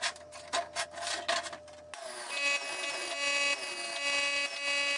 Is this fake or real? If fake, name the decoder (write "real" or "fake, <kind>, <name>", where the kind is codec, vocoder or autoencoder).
real